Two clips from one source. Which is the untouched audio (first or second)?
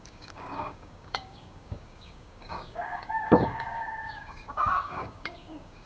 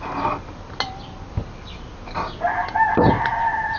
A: second